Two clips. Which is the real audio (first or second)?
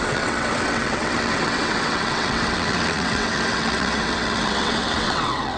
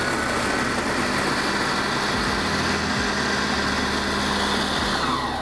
second